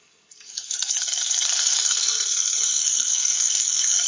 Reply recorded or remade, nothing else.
remade